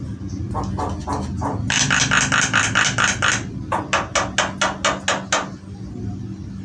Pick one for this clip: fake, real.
real